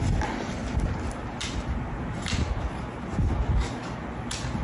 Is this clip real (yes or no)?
yes